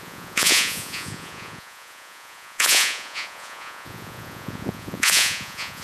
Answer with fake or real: fake